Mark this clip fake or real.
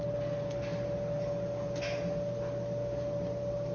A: real